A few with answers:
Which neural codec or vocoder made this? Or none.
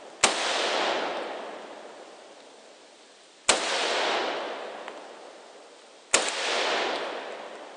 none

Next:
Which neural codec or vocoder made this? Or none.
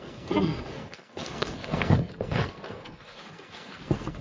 codec, SNAC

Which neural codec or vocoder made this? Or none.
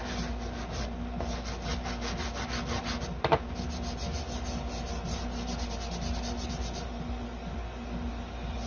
none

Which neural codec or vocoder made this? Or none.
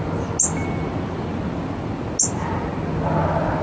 none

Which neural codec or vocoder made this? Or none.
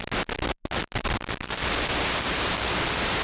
none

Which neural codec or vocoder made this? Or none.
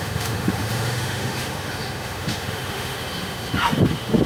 autoencoder, DAC-VAE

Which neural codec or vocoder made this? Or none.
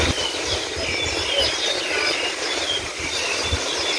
none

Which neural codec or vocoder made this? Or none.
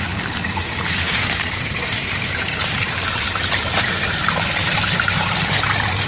vocoder, BigVGAN v2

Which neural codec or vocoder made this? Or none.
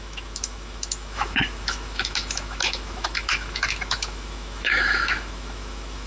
autoencoder, DAC-VAE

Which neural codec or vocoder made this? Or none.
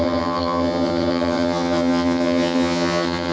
vocoder, HiFi-GAN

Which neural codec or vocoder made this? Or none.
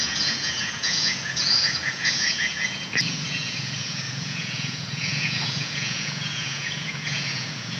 vocoder, Vocos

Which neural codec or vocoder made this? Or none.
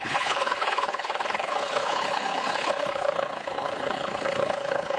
codec, HILCodec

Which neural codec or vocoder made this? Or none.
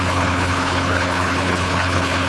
codec, HILCodec